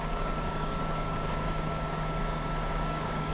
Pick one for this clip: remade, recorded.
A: remade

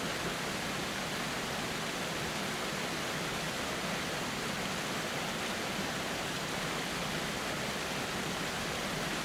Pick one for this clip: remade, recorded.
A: recorded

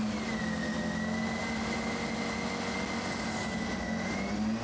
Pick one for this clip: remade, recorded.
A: recorded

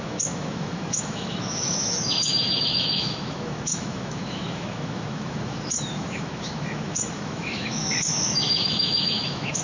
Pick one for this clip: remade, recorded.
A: remade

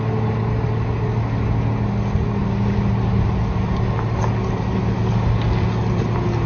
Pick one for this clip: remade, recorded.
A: recorded